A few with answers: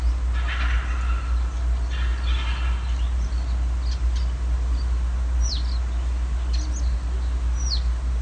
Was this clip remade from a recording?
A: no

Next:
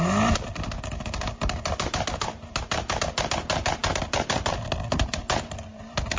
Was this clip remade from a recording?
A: no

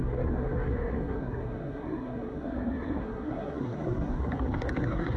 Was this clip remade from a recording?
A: yes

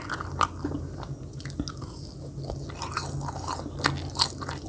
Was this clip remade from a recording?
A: no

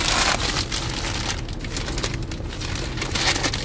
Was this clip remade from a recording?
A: no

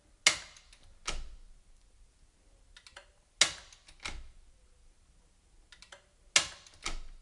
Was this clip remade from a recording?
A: no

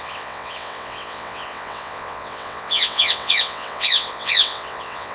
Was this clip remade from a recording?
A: yes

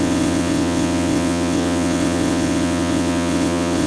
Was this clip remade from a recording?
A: yes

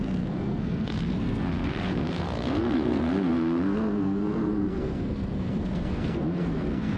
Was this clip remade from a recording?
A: yes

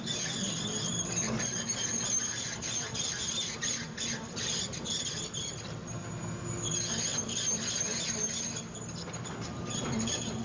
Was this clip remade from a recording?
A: no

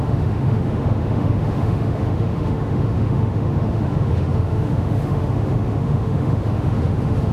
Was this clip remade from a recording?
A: yes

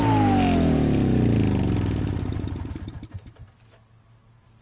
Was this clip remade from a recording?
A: no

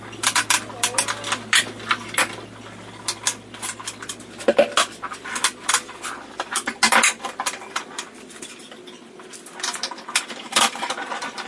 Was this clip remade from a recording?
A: no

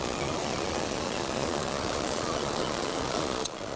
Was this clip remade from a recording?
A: yes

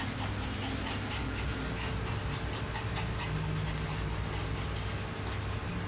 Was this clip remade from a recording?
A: no